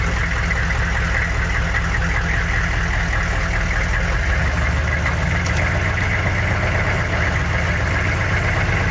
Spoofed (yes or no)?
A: no